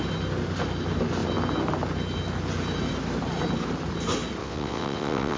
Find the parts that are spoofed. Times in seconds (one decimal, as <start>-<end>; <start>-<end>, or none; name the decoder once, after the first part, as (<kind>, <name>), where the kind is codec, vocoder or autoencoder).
4.4-5.4 (vocoder, WaveNeXt)